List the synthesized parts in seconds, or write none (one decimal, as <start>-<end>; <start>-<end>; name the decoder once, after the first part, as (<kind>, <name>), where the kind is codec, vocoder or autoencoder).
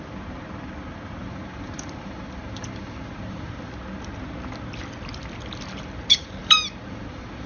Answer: 1.2-3.7 (vocoder, BigVGAN v2); 6.4-7.5